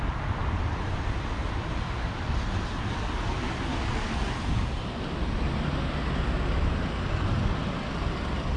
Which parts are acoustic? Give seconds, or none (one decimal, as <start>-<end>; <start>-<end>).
0.0-3.7; 4.2-8.6

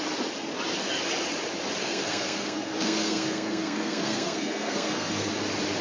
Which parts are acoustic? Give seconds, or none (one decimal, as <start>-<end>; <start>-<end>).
0.0-1.8; 5.3-5.8